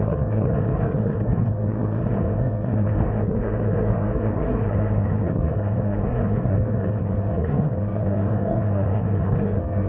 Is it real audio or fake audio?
fake